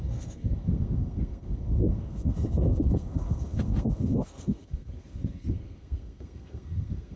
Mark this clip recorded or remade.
remade